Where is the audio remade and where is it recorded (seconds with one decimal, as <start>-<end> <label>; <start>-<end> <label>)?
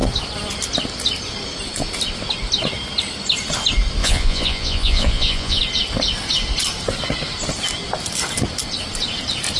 0.0-4.0 recorded; 4.0-5.6 remade; 5.6-9.6 recorded